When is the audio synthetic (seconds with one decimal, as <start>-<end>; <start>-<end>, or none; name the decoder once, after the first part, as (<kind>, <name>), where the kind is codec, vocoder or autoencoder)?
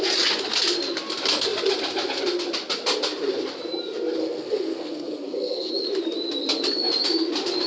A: 4.2-5.7 (codec, SNAC)